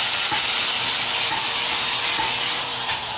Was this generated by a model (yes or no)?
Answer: no